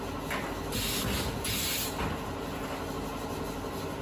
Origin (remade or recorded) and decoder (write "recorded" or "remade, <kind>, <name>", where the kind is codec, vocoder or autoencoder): recorded